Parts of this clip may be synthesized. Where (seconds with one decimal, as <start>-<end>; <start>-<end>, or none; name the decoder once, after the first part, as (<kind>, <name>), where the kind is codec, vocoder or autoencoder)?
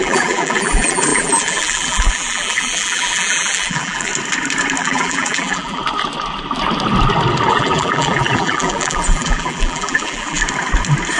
0.0-4.1 (vocoder, BigVGAN v2); 4.8-5.8; 7.5-10.4